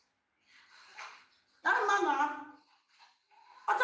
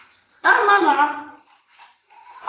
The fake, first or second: second